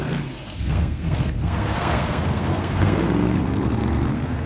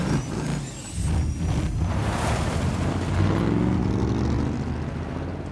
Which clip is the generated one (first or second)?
first